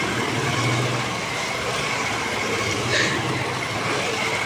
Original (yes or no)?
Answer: yes